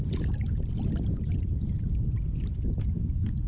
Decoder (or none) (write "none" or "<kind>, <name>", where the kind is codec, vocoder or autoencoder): vocoder, BigVGAN v2